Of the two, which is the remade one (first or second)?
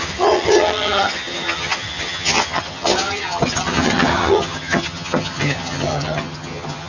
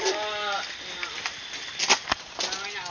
first